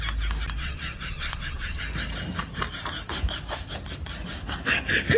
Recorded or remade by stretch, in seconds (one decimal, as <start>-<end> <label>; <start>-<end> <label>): 0.0-0.6 recorded; 0.6-1.8 remade; 1.8-5.2 recorded